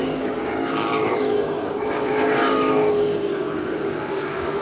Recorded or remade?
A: remade